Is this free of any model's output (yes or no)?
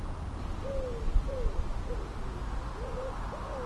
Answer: yes